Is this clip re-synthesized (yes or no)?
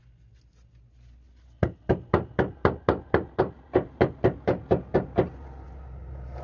no